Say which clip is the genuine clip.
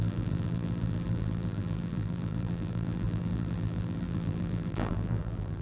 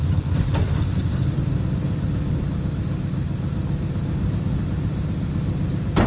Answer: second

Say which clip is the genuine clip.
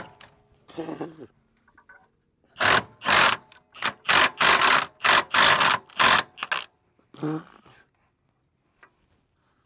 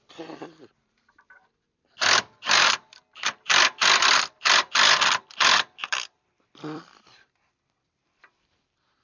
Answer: first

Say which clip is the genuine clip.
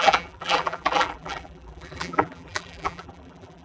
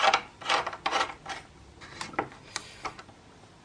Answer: second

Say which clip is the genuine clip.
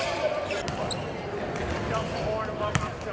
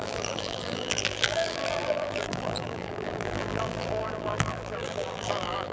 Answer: first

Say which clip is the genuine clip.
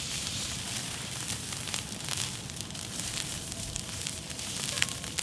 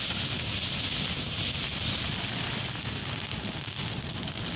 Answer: second